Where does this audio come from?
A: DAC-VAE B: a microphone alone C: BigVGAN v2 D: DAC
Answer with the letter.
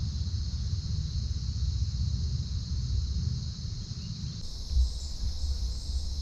B